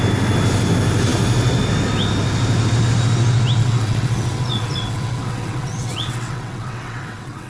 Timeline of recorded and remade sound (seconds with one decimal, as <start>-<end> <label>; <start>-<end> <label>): 0.0-3.6 recorded; 3.6-7.5 remade